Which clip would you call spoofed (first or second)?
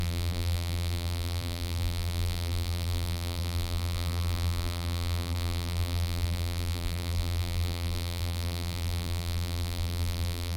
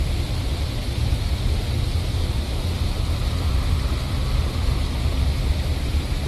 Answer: first